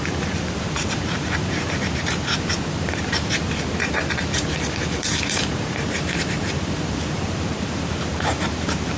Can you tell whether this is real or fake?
fake